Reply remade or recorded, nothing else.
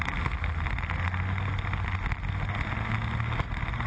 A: recorded